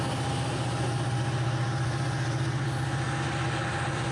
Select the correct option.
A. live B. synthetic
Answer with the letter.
A